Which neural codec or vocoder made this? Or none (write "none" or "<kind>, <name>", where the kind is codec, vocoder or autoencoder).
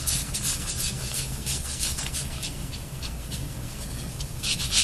codec, SNAC